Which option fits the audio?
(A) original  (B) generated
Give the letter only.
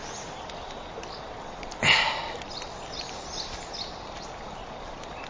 A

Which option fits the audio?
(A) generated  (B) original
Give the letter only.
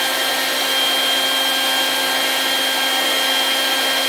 B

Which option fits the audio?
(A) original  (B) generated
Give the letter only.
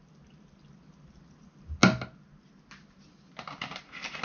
A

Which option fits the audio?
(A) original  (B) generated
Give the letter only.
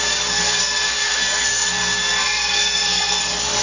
B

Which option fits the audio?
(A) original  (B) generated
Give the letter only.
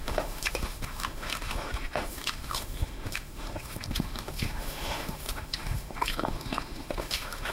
B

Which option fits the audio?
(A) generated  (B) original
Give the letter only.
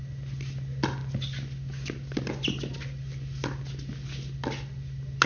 B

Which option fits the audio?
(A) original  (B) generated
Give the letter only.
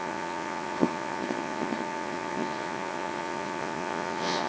B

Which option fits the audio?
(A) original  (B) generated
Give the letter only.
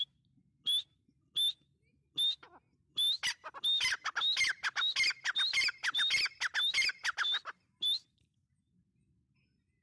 A